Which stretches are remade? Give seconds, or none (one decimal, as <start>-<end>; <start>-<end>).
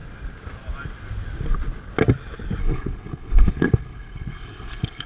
2.6-5.1